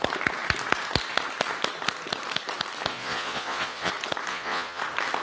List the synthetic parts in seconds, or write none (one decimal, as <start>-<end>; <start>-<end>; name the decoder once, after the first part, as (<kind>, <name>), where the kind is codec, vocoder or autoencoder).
2.9-3.9 (vocoder, Vocos); 4.3-4.8